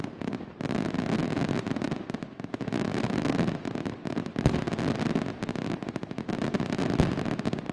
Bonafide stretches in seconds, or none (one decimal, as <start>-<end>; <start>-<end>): 0.0-7.7